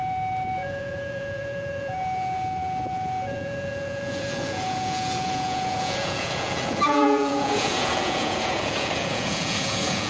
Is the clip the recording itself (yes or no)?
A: no